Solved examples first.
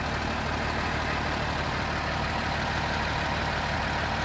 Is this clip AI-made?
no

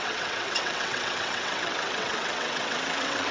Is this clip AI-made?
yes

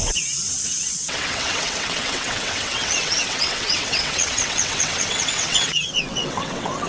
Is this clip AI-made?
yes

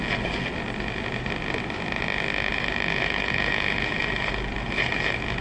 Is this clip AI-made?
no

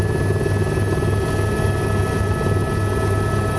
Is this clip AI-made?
no